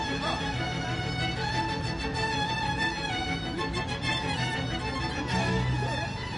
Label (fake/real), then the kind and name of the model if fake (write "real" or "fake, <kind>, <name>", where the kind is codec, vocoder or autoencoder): real